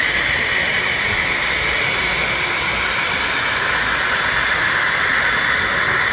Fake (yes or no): no